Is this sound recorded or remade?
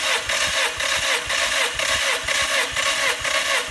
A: recorded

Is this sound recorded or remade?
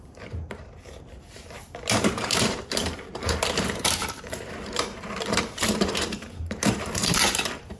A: remade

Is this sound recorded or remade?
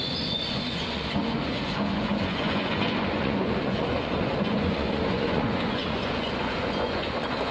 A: remade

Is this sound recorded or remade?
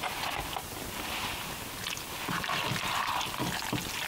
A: recorded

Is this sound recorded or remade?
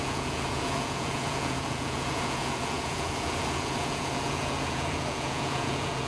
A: remade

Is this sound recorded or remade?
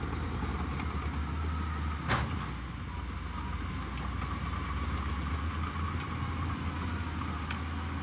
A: recorded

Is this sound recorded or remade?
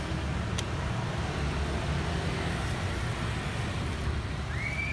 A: recorded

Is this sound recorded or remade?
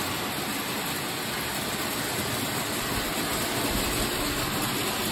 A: recorded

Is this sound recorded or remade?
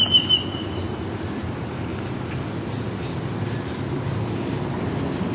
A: recorded